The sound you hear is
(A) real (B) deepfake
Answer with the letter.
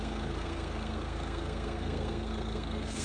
B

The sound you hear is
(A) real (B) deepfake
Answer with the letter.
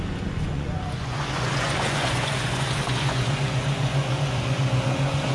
B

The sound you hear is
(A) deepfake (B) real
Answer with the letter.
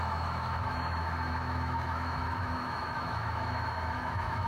A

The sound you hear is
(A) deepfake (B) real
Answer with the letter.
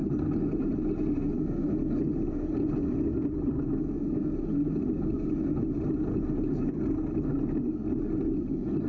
B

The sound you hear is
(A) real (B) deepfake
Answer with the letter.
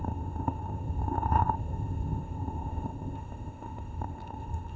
B